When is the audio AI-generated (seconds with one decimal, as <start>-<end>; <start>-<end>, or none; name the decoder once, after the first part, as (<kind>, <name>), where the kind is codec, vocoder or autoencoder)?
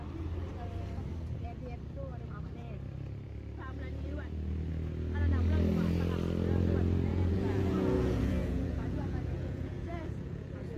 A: 7.1-10.8 (vocoder, Vocos)